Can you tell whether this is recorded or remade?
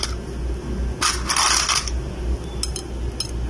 recorded